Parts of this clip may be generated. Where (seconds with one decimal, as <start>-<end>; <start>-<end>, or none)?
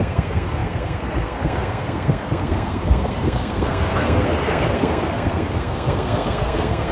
0.0-6.9